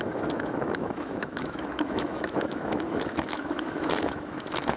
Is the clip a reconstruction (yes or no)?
yes